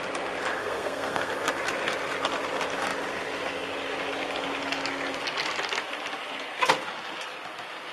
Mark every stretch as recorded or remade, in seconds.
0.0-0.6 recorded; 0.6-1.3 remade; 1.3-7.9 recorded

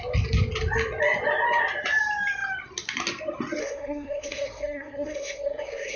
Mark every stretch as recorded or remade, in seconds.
0.0-3.6 recorded; 3.6-6.0 remade

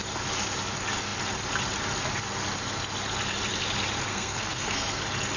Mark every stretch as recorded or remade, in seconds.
0.0-4.1 recorded; 4.1-5.0 remade; 5.0-5.4 recorded